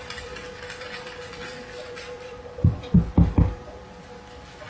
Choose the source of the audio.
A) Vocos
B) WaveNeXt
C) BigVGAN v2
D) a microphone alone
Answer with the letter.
C